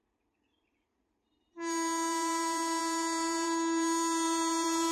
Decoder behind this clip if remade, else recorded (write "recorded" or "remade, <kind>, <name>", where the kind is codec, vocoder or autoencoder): remade, vocoder, BigVGAN v2